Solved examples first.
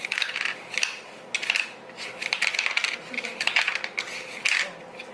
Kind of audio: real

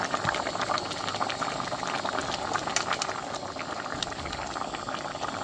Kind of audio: real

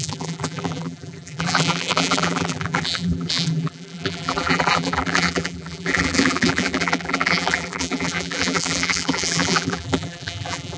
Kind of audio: fake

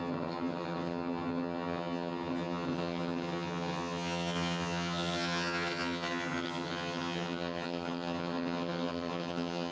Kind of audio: fake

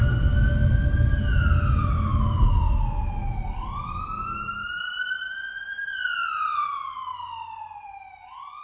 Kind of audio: real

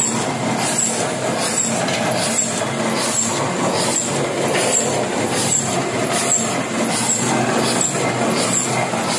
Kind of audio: real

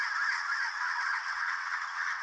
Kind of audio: fake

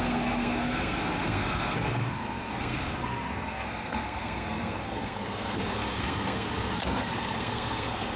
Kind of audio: fake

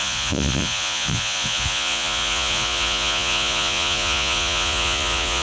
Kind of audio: fake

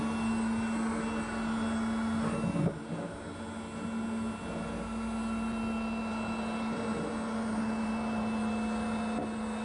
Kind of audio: real